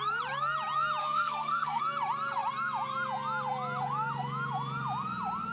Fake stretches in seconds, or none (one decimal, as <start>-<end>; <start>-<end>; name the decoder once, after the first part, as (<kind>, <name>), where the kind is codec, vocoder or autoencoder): 1.0-1.8 (codec, SNAC)